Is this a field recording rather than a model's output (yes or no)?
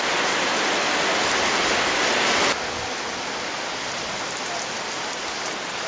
yes